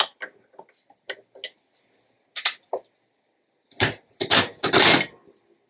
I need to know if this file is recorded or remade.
recorded